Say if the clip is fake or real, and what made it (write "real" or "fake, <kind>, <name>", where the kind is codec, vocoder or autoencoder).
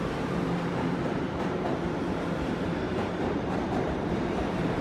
fake, vocoder, BigVGAN v2